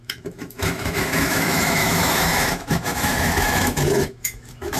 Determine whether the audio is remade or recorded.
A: remade